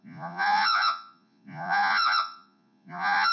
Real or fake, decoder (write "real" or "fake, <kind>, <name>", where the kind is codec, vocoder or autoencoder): fake, vocoder, Vocos